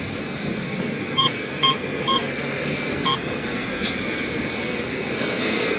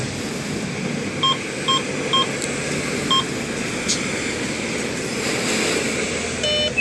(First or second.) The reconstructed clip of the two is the first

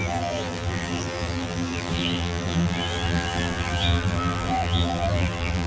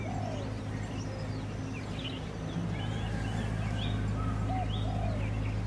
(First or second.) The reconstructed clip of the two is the first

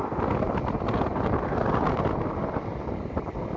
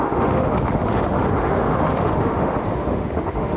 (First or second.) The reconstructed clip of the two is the second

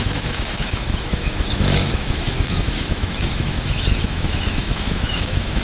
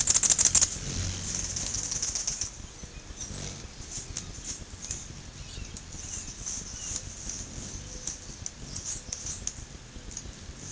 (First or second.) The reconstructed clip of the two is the first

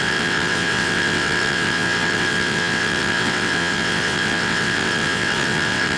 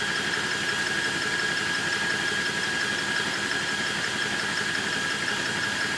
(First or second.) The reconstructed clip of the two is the first